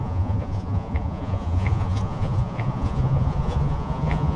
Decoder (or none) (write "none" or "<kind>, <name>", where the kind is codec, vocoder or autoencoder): vocoder, Vocos